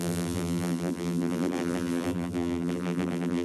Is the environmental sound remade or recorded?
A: remade